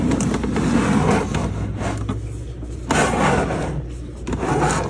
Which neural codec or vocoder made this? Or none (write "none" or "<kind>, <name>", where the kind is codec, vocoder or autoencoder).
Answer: none